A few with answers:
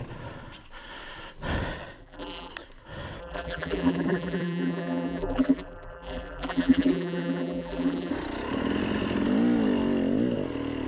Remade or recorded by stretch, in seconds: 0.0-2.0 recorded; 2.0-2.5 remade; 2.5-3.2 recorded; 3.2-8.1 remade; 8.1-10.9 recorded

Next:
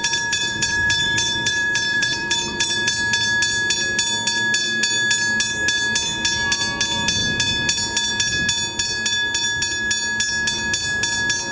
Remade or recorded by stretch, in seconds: 0.0-2.9 remade; 2.9-11.5 recorded

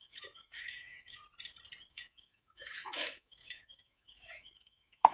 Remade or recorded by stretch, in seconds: 0.0-1.2 remade; 1.2-1.9 recorded; 1.9-5.1 remade